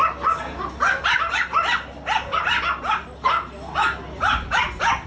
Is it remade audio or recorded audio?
recorded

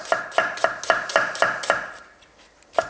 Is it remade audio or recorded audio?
recorded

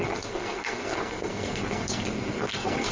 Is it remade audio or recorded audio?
remade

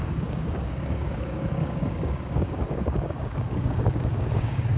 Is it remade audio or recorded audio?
remade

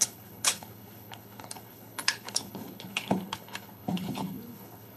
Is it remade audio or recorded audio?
remade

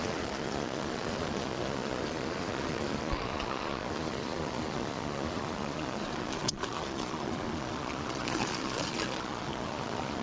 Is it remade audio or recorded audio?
remade